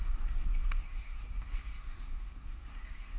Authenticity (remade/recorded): remade